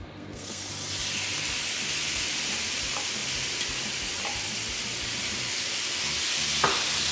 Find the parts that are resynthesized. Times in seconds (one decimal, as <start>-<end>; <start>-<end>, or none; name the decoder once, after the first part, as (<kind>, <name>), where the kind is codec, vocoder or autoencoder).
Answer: 0.0-0.7 (codec, SNAC)